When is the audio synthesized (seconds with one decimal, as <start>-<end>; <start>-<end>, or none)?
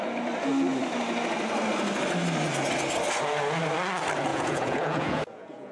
4.3-5.7